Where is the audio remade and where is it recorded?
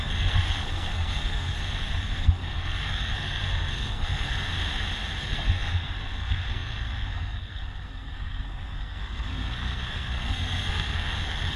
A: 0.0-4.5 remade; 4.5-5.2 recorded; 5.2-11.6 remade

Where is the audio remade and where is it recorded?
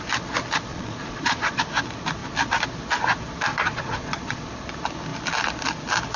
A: 0.0-0.7 recorded; 0.7-1.6 remade; 1.6-3.5 recorded; 3.5-4.5 remade; 4.5-6.2 recorded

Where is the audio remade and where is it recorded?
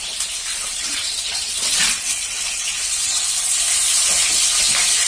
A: 0.0-0.5 recorded; 0.5-3.6 remade; 3.6-5.1 recorded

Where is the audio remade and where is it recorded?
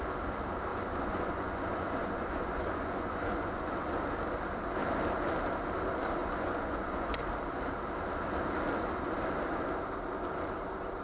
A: 0.0-0.7 recorded; 0.7-3.7 remade; 3.7-6.2 recorded; 6.2-7.2 remade; 7.2-11.0 recorded